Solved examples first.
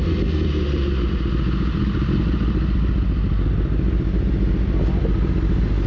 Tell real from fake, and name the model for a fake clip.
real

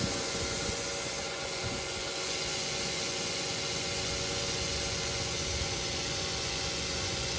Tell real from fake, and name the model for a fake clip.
fake, vocoder, Vocos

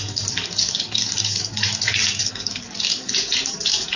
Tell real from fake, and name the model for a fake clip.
fake, codec, DAC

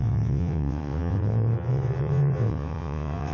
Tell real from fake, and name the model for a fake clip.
fake, vocoder, WaveNeXt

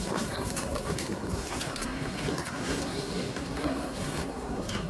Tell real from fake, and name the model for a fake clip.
fake, codec, SNAC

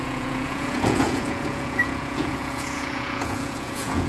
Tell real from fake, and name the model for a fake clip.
fake, vocoder, Vocos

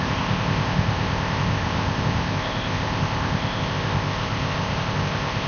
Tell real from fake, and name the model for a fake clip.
fake, codec, ZipCodec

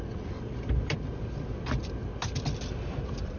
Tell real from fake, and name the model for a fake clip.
real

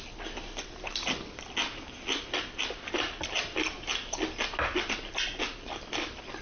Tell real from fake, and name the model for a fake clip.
real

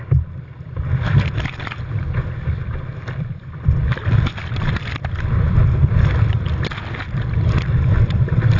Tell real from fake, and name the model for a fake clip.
fake, vocoder, BigVGAN v2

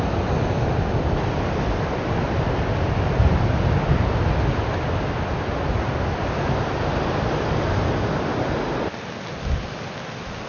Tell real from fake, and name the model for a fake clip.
real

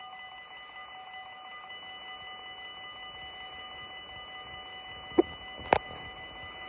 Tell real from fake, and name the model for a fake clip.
real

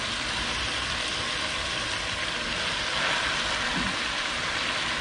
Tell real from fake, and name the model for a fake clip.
real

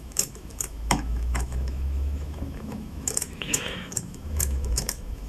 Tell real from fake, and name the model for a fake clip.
fake, autoencoder, DAC-VAE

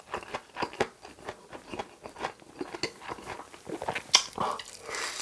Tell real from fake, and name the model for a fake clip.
real